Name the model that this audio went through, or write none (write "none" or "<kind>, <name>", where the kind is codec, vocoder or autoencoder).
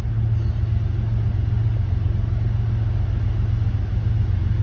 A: none